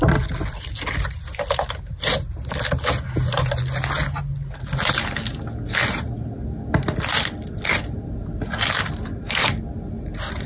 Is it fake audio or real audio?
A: real